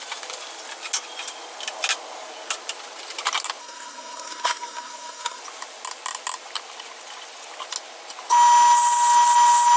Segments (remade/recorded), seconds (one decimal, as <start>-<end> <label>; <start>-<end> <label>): 0.0-3.6 recorded; 3.6-5.4 remade; 5.4-9.8 recorded